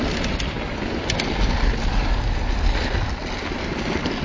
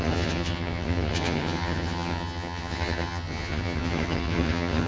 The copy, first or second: second